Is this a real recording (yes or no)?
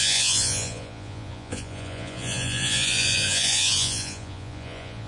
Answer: no